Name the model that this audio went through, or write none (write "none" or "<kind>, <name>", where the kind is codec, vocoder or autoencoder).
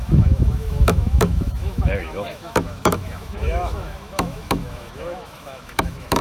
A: autoencoder, DAC-VAE